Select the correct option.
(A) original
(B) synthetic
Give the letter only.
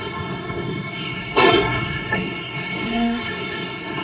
B